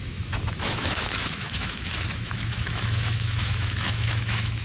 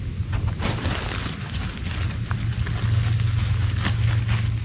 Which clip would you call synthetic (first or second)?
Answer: first